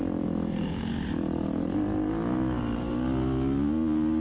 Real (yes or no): yes